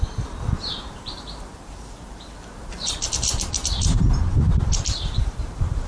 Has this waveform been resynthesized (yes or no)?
yes